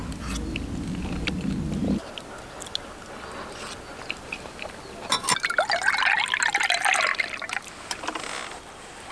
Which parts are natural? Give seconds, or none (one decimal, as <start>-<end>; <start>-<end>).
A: 0.0-9.1